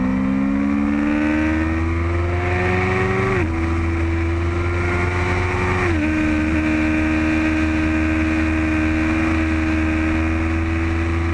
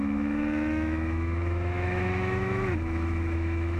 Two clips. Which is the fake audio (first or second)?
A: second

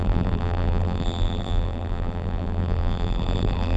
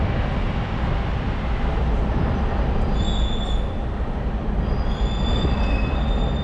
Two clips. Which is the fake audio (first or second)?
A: first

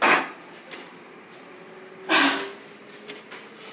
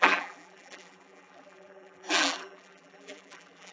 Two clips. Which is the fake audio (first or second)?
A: second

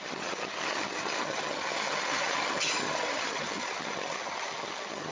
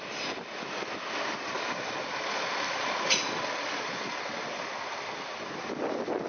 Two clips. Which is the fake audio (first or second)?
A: first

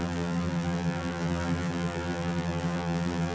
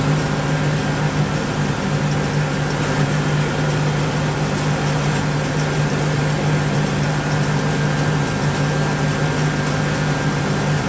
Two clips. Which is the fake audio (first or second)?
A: first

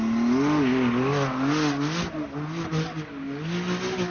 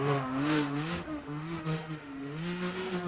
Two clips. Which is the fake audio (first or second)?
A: second